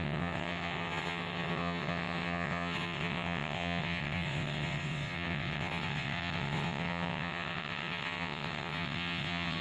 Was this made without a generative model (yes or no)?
no